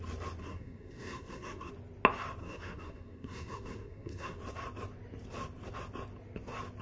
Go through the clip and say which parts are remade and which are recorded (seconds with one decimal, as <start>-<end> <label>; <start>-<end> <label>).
0.0-0.4 recorded; 0.4-1.7 remade; 1.7-2.4 recorded; 2.4-4.4 remade; 4.4-6.8 recorded